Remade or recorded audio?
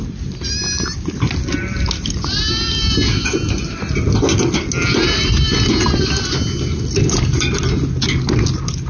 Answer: recorded